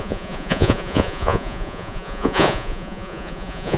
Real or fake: fake